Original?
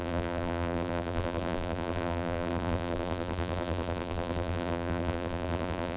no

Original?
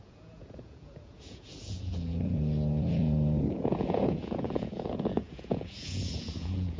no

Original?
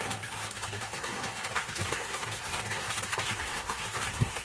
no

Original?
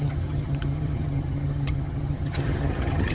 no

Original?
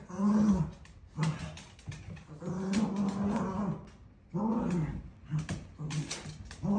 yes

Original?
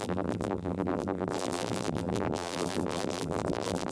no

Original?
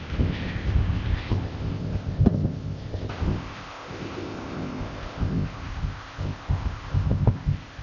no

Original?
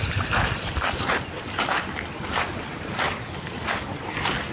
yes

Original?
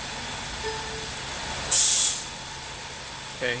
yes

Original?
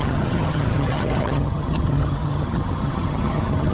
no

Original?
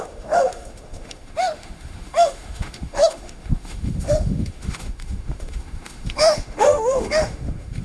no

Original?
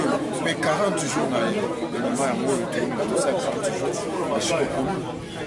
yes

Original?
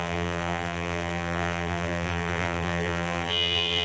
no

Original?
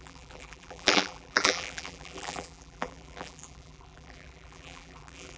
no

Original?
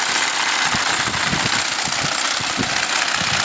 yes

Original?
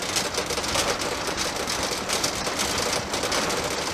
yes